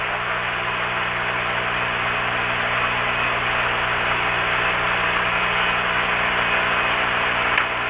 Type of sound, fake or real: real